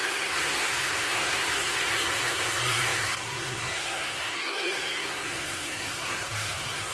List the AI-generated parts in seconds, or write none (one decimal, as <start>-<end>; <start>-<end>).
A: 0.0-6.9

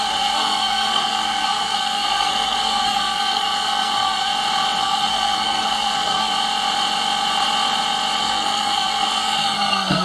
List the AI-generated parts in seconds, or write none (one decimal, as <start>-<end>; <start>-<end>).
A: 0.0-4.3; 4.8-6.3; 8.2-10.0

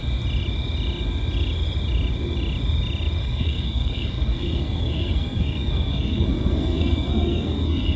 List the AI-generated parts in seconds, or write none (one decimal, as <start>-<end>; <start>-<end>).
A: 3.2-8.0

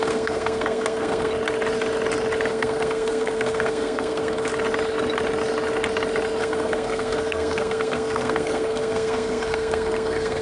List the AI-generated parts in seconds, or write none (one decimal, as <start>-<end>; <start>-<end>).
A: 0.0-1.3; 2.5-4.5; 6.4-10.4